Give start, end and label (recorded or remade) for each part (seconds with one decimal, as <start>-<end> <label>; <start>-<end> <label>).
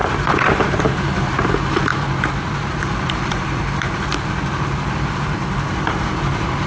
0.0-6.7 remade